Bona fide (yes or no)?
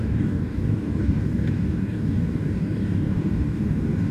no